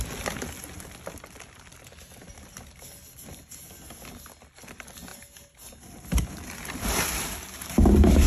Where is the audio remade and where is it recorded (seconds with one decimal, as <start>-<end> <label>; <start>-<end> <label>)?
0.0-8.3 recorded